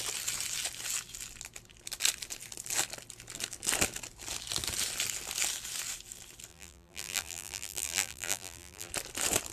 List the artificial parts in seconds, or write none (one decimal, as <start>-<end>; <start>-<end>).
6.5-8.9